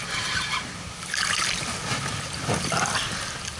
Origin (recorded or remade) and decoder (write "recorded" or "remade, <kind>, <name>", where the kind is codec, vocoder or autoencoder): recorded